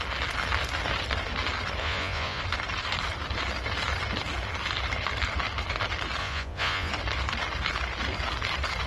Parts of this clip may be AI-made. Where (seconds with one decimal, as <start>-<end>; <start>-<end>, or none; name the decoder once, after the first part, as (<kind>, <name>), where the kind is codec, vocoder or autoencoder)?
1.8-2.4 (vocoder, Vocos); 6.2-6.9